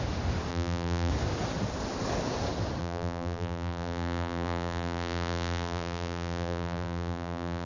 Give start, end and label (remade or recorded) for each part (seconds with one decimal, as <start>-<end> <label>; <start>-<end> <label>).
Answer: 0.0-0.5 recorded; 0.5-1.1 remade; 1.1-2.8 recorded; 2.8-7.7 remade